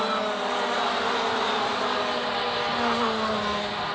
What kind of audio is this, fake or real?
real